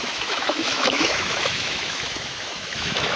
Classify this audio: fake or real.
fake